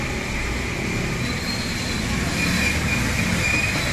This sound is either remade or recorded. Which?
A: recorded